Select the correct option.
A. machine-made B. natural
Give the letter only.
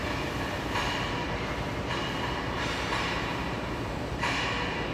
A